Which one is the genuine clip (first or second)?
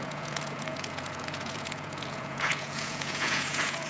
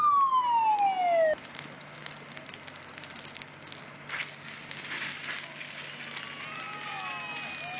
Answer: second